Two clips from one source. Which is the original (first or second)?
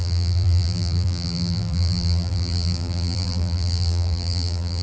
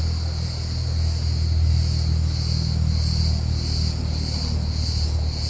second